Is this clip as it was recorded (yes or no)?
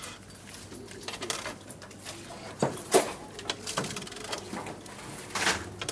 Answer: yes